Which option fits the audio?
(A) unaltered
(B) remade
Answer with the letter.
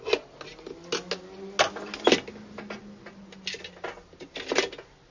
A